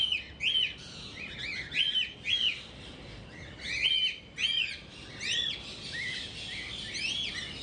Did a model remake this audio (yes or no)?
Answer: no